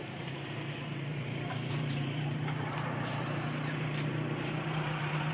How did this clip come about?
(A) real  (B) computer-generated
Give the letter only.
B